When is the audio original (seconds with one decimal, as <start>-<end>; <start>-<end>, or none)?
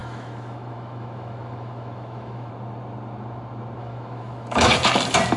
2.5-3.8; 4.7-5.4